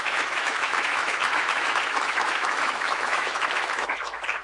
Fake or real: fake